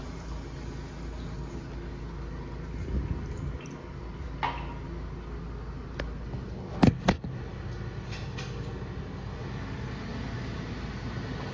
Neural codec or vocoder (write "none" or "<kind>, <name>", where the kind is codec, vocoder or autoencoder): none